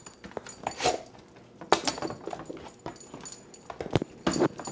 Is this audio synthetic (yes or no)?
no